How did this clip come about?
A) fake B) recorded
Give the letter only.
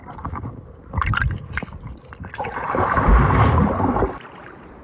B